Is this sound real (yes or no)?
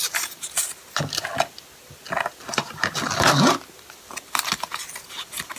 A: yes